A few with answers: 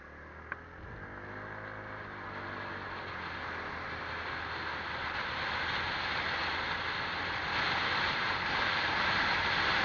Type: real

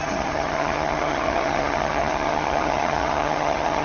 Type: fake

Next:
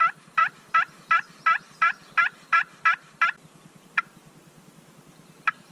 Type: fake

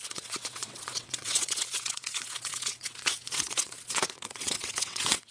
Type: fake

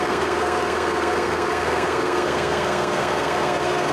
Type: fake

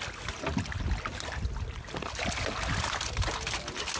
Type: real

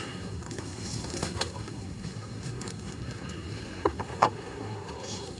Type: fake